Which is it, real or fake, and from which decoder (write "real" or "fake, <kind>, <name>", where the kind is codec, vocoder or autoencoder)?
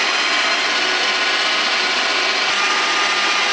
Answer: real